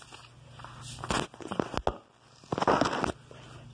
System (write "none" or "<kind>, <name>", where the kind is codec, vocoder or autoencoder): none